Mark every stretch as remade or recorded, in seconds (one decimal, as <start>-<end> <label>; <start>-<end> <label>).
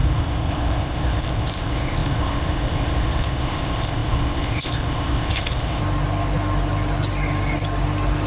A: 0.0-5.8 remade; 5.8-8.3 recorded